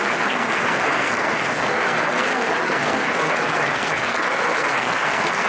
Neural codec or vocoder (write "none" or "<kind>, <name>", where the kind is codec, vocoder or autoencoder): codec, SNAC